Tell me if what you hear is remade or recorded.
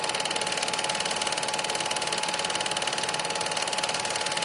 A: recorded